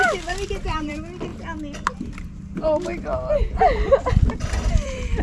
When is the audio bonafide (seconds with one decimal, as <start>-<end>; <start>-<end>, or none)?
1.3-4.4